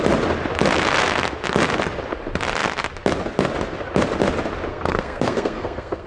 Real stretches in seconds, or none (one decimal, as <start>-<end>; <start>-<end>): 0.0-4.7